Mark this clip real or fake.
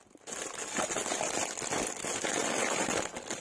real